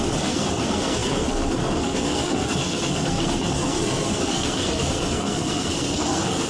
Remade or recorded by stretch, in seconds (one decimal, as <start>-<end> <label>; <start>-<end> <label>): 0.0-6.5 remade